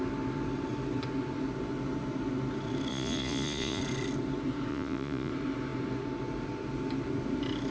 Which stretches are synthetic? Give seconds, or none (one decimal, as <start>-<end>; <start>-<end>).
2.9-3.8; 4.7-5.3